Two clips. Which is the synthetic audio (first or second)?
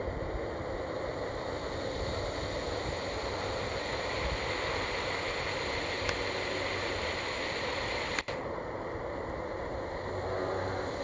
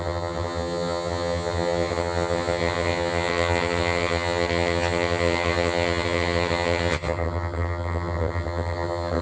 second